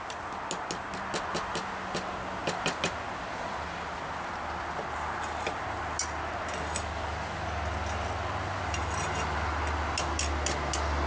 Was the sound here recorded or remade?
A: recorded